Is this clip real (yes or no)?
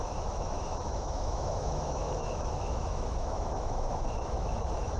no